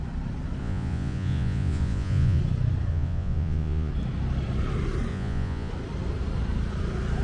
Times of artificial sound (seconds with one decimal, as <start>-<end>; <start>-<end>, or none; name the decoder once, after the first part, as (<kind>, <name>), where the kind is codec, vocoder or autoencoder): 0.6-2.4 (vocoder, Vocos); 2.9-3.9; 5.1-5.7